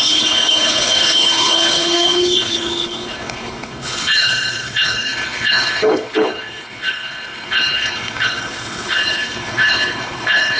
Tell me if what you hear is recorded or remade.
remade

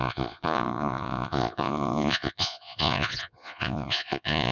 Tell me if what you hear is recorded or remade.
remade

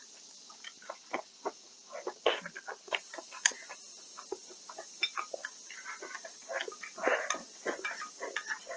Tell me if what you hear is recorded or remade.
recorded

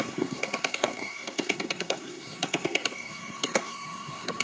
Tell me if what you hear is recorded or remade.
remade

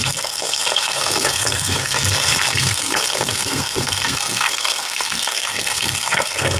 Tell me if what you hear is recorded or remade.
remade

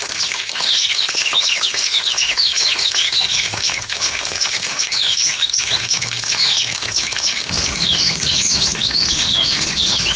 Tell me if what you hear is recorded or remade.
remade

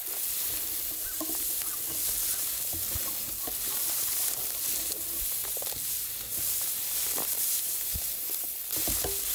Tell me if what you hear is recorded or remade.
recorded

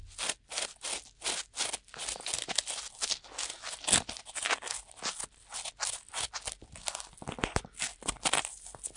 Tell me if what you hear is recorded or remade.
recorded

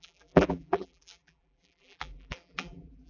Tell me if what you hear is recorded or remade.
remade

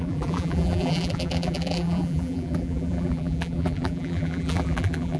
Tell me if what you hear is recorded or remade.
remade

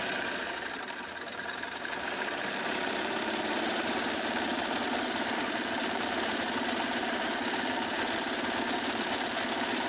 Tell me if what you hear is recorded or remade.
remade